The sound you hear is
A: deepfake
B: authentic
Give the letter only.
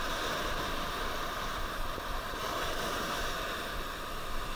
B